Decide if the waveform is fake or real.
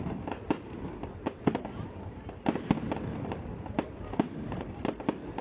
real